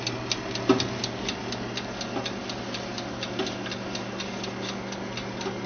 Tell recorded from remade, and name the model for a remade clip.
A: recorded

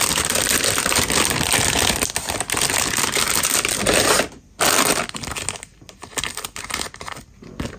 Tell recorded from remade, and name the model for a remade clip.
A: recorded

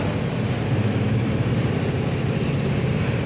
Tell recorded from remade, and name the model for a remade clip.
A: remade, vocoder, BigVGAN v2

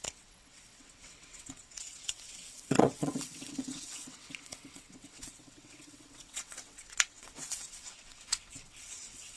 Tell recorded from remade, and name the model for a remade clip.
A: remade, vocoder, WaveNeXt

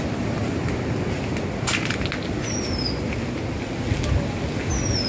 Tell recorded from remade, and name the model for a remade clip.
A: recorded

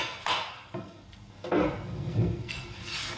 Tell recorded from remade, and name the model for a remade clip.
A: remade, codec, SNAC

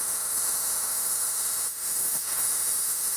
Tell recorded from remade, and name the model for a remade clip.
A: remade, autoencoder, DAC-VAE